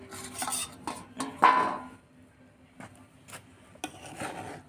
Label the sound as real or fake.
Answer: real